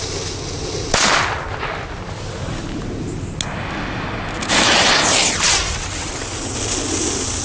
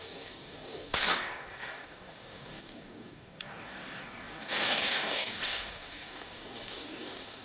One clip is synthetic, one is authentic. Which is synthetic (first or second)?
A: second